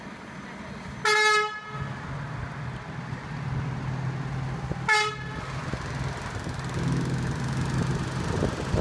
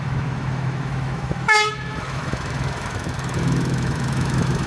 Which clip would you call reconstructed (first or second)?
second